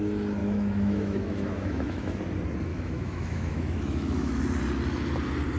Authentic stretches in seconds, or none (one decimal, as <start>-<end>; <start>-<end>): 0.0-0.4; 2.2-2.7; 4.4-5.6